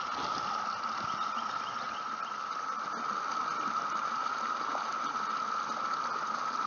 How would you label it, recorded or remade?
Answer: recorded